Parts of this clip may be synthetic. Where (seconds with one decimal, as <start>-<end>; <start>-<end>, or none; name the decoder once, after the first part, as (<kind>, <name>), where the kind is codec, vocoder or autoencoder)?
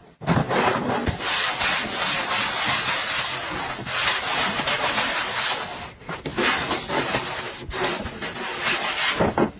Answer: none